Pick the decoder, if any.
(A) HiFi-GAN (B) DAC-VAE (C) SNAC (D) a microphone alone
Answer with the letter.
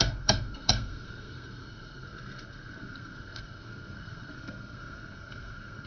C